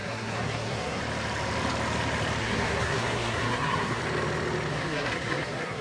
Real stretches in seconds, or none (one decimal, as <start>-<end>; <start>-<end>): 1.0-2.4; 4.0-4.7